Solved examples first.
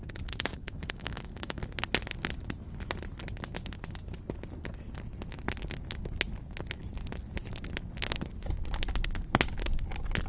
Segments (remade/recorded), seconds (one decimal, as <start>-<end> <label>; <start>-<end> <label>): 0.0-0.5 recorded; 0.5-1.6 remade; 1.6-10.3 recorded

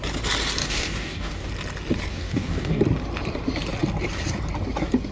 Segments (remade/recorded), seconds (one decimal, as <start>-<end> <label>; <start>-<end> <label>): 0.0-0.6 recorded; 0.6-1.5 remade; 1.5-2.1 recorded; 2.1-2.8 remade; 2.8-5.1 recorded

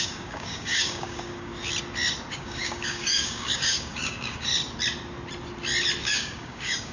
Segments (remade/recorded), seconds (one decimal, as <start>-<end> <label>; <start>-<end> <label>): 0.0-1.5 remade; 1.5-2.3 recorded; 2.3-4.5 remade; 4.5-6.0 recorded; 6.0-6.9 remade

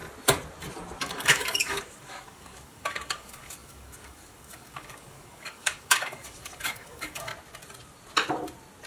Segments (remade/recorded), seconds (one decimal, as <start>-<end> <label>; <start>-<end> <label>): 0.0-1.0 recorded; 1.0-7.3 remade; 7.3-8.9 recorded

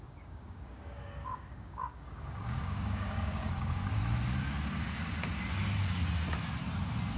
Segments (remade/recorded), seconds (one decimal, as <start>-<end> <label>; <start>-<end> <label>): 0.0-4.0 remade; 4.0-7.2 recorded

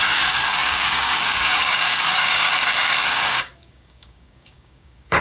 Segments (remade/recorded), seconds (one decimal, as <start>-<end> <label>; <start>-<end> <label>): 0.0-5.2 remade

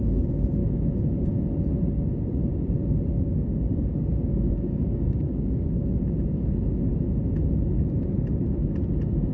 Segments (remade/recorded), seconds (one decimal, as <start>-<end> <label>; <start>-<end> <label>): 0.0-3.1 recorded; 3.1-6.0 remade; 6.0-9.3 recorded

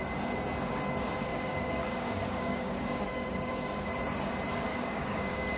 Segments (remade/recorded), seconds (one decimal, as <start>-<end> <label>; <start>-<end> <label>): 0.0-1.3 recorded; 1.3-3.9 remade; 3.9-4.7 recorded; 4.7-5.6 remade